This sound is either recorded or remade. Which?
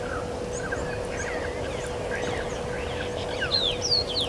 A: recorded